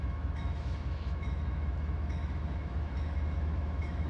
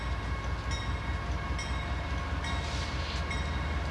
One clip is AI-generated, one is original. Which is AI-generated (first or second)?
first